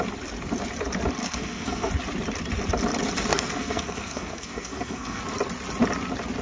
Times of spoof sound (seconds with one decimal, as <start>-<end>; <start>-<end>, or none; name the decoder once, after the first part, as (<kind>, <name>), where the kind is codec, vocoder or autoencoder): 1.2-1.9 (codec, SNAC); 3.3-5.2